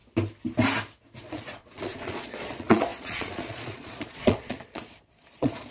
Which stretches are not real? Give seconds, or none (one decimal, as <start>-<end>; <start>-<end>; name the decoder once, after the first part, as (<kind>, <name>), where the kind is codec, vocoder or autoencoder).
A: 1.2-5.7 (vocoder, Vocos)